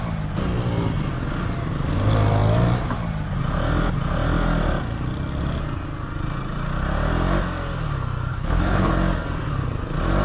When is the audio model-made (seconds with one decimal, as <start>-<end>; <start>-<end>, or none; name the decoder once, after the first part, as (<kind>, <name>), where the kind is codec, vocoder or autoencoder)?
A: 8.3-8.9 (codec, HILCodec)